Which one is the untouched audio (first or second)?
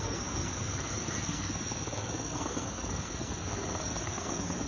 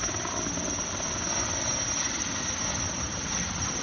second